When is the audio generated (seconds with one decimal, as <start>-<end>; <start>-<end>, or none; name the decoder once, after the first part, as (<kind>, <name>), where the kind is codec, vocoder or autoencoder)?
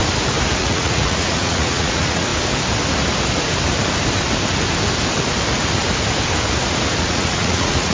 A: 0.6-2.3 (vocoder, Vocos); 7.0-7.9